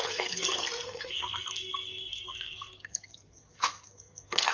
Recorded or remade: remade